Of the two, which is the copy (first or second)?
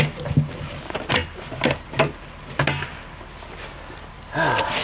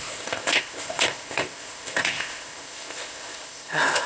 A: second